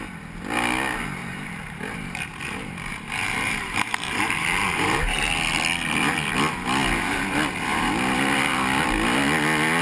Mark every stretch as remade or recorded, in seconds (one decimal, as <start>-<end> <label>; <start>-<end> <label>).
0.0-1.2 recorded; 1.2-5.3 remade; 5.3-9.8 recorded